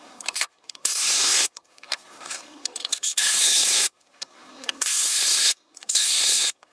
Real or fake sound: fake